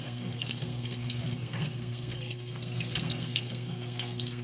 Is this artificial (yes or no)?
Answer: yes